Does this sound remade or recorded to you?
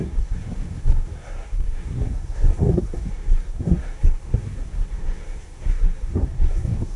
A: remade